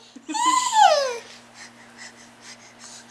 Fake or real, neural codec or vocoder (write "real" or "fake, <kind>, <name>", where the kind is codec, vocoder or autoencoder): real